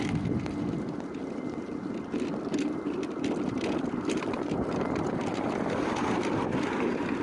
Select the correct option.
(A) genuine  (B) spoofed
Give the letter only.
A